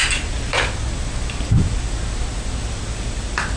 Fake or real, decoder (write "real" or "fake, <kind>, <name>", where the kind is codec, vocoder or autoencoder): real